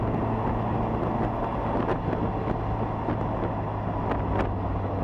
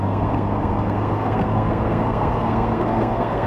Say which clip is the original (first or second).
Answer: first